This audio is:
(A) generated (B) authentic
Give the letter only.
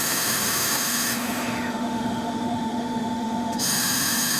A